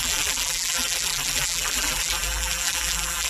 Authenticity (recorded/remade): remade